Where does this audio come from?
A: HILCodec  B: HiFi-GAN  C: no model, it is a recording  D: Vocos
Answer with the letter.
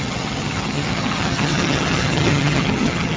B